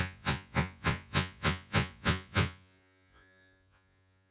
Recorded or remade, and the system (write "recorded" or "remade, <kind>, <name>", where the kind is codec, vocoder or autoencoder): remade, vocoder, Vocos